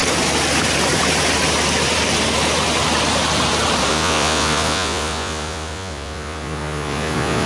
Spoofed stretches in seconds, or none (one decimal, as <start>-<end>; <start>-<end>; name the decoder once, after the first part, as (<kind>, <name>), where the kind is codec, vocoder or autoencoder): 3.9-7.5 (vocoder, Vocos)